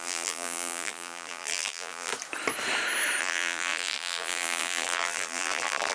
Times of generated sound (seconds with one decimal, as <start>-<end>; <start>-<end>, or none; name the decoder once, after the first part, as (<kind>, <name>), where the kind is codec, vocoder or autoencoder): 0.0-2.1 (vocoder, BigVGAN v2); 3.2-5.9